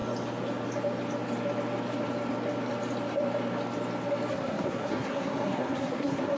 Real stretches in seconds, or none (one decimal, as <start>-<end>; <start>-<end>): 0.0-4.3